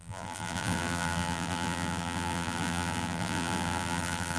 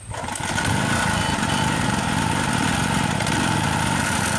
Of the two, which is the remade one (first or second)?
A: first